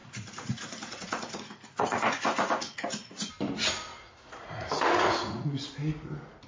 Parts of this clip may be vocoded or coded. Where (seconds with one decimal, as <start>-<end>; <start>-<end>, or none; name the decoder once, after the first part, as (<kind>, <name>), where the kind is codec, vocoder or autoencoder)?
0.0-3.3 (vocoder, Vocos); 3.9-5.7